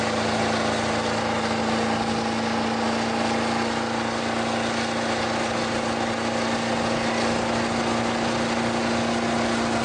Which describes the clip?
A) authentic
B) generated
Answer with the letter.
A